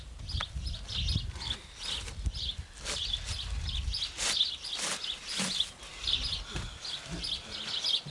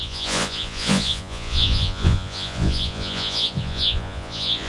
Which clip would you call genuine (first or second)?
first